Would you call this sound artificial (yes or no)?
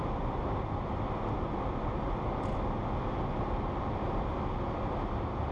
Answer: no